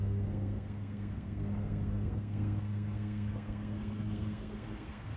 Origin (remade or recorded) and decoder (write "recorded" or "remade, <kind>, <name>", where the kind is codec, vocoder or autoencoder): remade, codec, SNAC